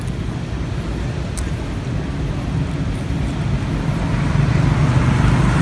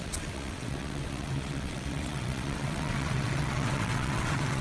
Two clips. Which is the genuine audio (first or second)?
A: first